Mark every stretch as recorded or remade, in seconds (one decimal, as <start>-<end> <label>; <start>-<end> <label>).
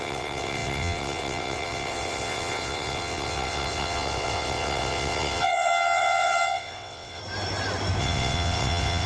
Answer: 0.0-7.2 remade; 7.2-8.0 recorded; 8.0-9.1 remade